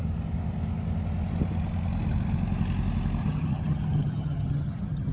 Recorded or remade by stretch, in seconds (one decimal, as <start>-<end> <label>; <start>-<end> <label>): 0.0-3.2 recorded; 3.2-5.1 remade